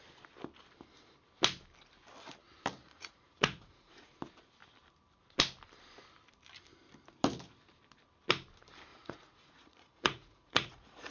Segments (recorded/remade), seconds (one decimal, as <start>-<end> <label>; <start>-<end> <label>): 0.0-2.8 recorded; 2.8-4.1 remade; 4.1-8.9 recorded; 8.9-11.1 remade